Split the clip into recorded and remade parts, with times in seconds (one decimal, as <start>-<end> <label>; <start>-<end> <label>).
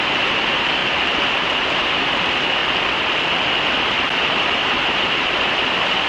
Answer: 0.0-2.6 remade; 2.6-4.2 recorded; 4.2-6.1 remade